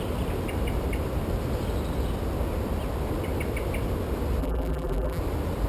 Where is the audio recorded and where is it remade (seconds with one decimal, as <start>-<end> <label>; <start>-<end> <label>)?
0.0-4.4 recorded; 4.4-5.2 remade; 5.2-5.7 recorded